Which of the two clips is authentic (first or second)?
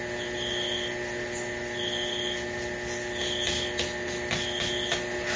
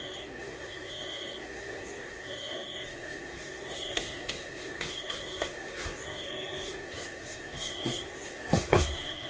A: first